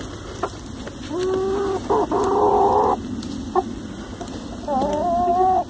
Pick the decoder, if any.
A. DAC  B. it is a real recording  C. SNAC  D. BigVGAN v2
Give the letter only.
B